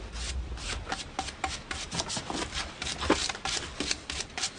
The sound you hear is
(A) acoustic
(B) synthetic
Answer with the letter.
A